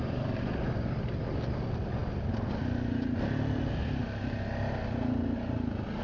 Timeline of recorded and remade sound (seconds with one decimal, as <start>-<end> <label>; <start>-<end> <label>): 0.0-6.0 recorded